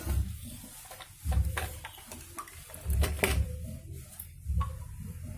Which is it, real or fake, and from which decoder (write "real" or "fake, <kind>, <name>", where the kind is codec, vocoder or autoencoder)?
real